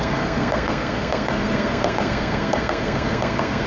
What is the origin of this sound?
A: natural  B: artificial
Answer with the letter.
B